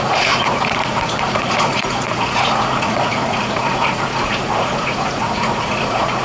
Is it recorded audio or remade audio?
remade